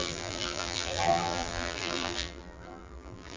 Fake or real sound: fake